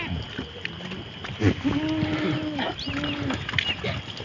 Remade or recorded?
recorded